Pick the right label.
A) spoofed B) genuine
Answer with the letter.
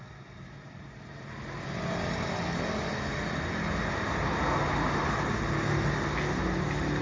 B